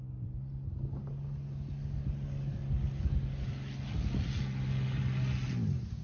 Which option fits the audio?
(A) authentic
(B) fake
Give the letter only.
A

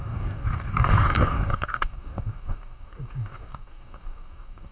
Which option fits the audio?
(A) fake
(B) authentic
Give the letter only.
A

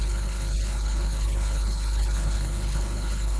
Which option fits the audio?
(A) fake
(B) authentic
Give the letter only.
A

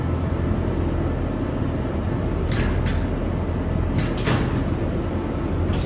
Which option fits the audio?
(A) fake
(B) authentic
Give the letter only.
B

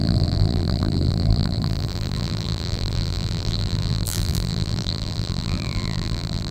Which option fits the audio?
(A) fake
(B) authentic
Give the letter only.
A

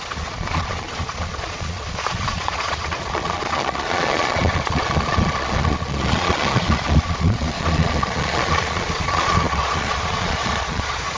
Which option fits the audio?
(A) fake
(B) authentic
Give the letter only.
A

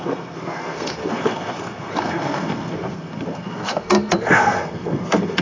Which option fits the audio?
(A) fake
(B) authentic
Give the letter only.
A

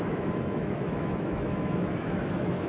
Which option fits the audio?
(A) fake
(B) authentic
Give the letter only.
A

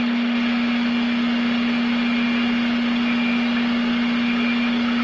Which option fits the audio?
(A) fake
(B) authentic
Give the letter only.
B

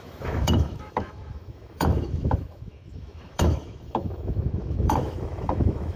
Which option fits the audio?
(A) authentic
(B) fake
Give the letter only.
B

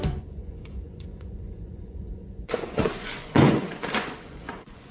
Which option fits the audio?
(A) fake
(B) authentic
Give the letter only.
A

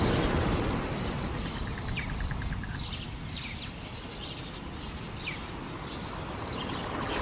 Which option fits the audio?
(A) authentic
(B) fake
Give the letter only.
A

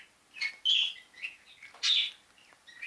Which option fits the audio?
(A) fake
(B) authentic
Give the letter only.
B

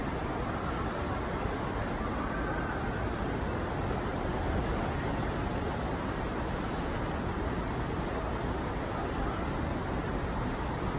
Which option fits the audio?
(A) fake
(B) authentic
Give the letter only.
B